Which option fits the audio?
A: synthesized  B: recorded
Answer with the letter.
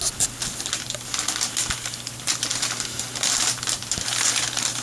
B